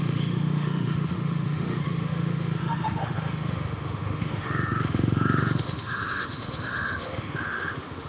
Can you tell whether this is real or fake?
fake